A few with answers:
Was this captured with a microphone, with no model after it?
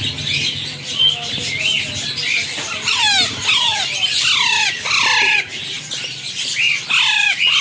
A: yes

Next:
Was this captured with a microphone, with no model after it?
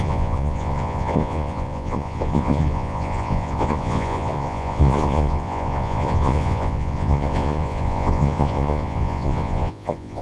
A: no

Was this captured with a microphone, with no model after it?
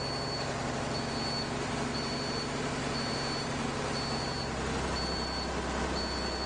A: yes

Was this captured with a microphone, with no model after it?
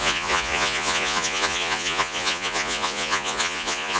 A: no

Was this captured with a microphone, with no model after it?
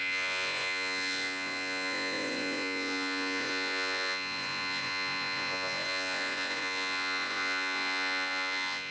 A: no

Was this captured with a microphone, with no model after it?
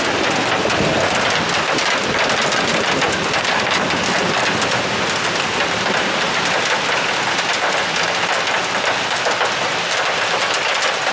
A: yes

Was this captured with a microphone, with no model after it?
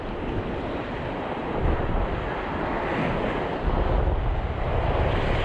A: yes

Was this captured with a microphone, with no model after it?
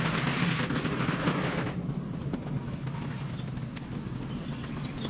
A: yes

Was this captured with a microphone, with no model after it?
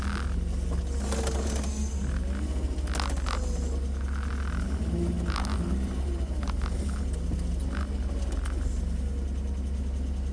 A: yes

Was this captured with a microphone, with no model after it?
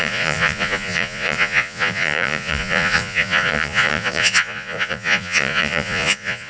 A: no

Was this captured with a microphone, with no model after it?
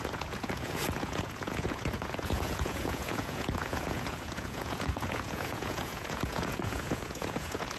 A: no